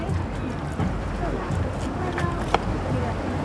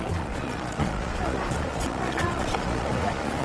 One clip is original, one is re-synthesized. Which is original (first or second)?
first